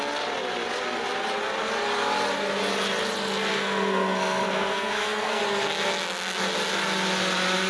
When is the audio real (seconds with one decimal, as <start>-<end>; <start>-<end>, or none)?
0.0-3.5; 5.4-7.7